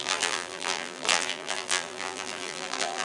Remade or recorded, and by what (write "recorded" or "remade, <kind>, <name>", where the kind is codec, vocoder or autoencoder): remade, vocoder, BigVGAN v2